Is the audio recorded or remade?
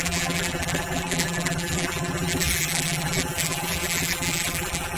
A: remade